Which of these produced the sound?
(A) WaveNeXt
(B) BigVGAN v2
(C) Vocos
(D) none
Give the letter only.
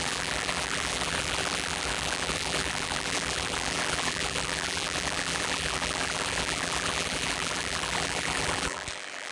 B